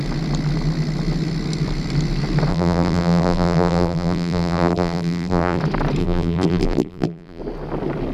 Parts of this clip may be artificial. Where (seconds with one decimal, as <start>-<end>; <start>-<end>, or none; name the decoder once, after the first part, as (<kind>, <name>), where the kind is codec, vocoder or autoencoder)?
2.5-5.6 (vocoder, BigVGAN v2); 6.0-7.4